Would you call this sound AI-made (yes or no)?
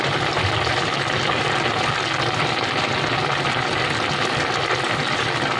no